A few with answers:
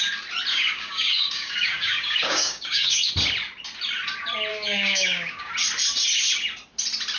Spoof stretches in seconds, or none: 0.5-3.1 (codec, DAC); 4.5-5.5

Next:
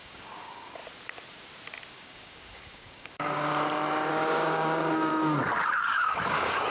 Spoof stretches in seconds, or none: 0.0-0.8 (codec, DAC); 1.9-3.5; 4.1-5.1; 5.8-6.7

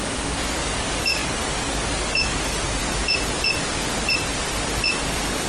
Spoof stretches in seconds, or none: 0.0-2.8 (codec, DAC); 4.9-5.5

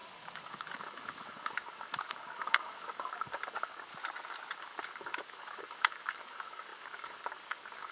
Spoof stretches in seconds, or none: 0.0-3.9 (codec, DAC); 4.5-7.9

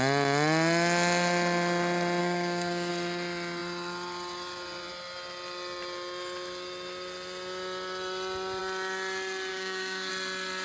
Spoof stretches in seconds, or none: 2.2-2.9 (codec, DAC); 9.5-10.1

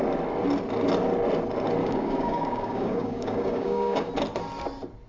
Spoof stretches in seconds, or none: 1.8-4.1 (codec, DAC)